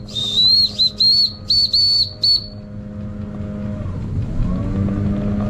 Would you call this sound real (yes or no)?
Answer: yes